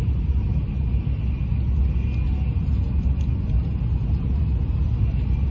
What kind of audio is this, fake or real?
real